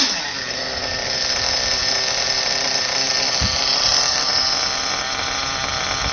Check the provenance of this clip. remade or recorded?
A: recorded